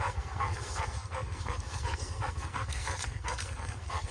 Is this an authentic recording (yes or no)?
no